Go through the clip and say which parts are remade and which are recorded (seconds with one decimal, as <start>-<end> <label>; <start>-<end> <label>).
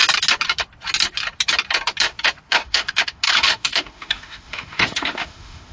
0.0-2.5 recorded; 2.5-5.7 remade